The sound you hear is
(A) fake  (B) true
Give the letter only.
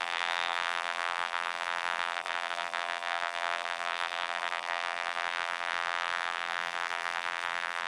A